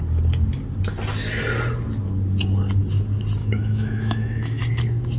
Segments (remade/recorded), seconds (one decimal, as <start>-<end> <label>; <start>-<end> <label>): 0.0-3.4 recorded; 3.4-4.6 remade; 4.6-5.2 recorded